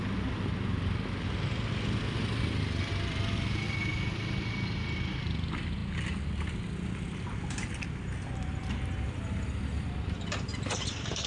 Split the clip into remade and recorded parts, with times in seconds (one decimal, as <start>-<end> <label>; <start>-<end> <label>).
0.0-10.5 recorded; 10.5-11.3 remade

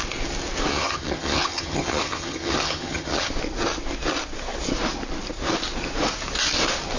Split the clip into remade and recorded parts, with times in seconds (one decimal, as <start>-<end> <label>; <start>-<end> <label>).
0.0-0.7 recorded; 0.7-3.3 remade; 3.3-7.0 recorded

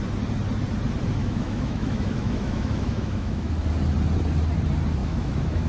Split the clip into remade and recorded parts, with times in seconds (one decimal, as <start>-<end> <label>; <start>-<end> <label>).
0.0-1.2 recorded; 1.2-3.5 remade; 3.5-5.0 recorded; 5.0-5.7 remade

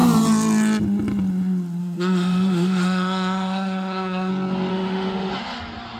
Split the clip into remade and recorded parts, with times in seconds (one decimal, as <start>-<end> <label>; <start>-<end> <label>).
0.0-1.8 recorded; 1.8-4.3 remade; 4.3-4.7 recorded; 4.7-5.3 remade; 5.3-6.0 recorded

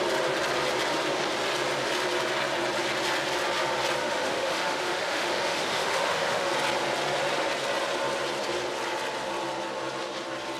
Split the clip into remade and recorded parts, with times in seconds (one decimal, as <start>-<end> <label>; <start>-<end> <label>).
0.0-4.0 recorded; 4.0-6.5 remade; 6.5-10.6 recorded

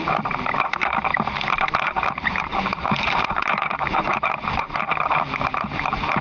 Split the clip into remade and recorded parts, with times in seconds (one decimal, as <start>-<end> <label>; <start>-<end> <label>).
0.0-0.5 remade; 0.5-1.8 recorded; 1.8-6.2 remade

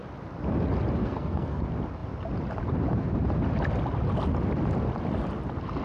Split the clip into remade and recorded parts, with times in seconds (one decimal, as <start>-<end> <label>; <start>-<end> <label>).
0.0-1.0 recorded; 1.0-1.6 remade; 1.6-5.8 recorded